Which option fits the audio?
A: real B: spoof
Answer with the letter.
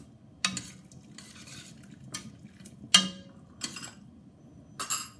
A